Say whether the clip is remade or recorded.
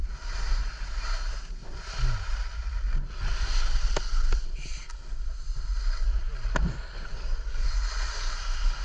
recorded